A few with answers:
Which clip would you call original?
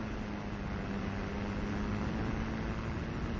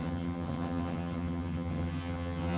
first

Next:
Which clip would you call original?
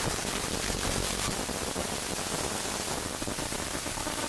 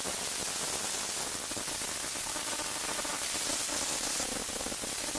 second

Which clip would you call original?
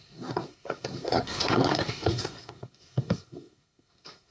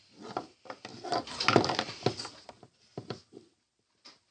second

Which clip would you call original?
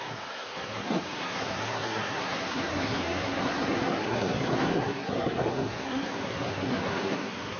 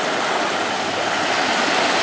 second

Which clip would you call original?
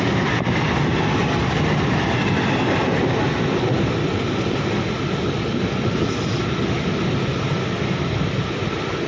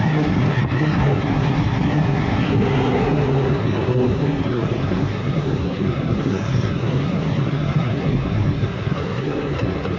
first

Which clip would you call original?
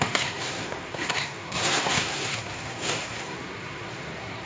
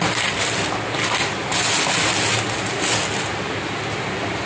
second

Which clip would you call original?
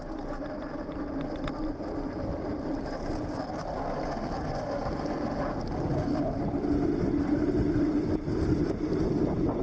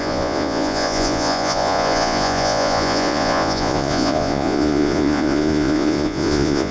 first